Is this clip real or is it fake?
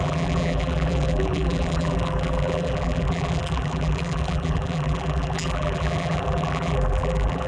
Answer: fake